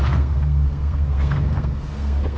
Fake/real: fake